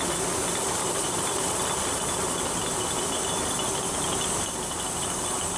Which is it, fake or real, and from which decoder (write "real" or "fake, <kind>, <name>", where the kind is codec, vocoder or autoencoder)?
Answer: real